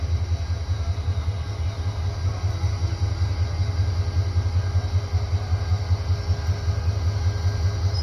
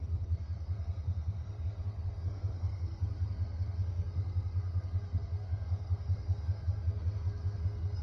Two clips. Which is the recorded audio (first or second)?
first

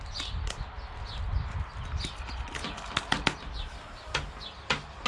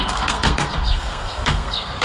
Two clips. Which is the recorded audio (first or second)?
first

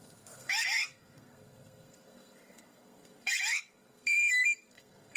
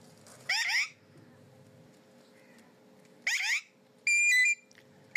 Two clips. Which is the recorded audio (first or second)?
second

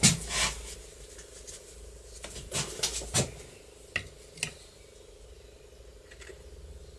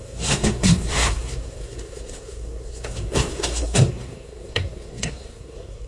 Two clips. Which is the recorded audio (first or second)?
first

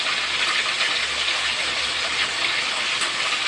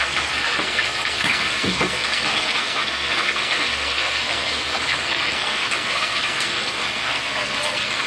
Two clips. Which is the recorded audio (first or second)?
first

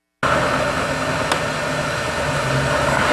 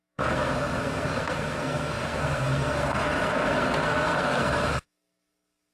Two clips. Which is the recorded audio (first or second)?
first